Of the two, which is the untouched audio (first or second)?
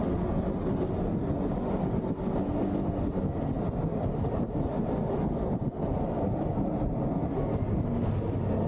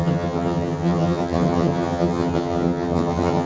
first